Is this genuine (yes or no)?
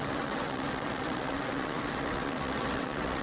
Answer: no